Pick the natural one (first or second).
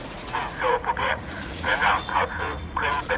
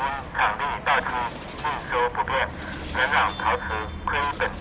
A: second